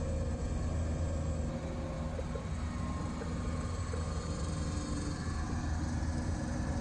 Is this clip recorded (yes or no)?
yes